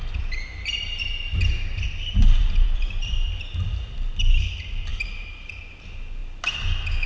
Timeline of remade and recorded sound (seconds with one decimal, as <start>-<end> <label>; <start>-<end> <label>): 0.0-2.4 recorded; 2.4-3.3 remade; 3.3-4.9 recorded; 4.9-5.5 remade; 5.5-7.1 recorded